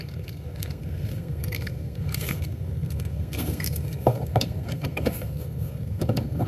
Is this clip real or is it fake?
fake